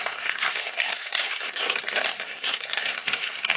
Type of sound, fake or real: fake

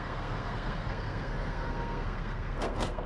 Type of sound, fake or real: fake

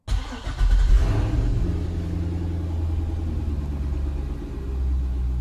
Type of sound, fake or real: real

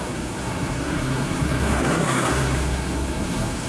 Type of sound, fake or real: fake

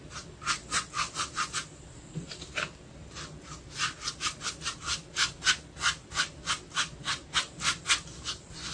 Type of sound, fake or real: real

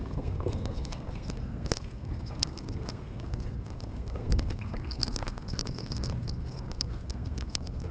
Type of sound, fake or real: fake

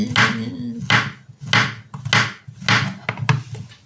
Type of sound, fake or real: real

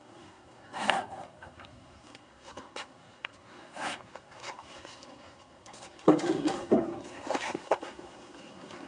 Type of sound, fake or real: fake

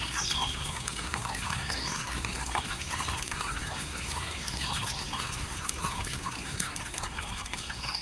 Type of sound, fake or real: fake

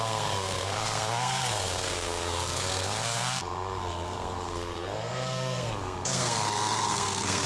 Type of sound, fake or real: fake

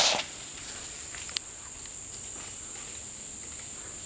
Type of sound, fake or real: real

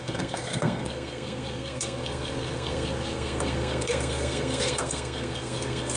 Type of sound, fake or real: fake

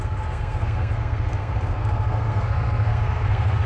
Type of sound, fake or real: fake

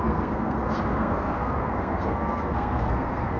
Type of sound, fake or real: fake